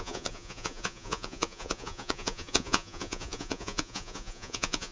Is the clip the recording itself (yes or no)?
no